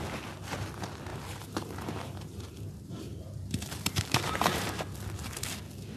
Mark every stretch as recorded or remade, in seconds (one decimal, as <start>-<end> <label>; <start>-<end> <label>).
0.0-1.1 recorded; 1.1-4.7 remade; 4.7-6.0 recorded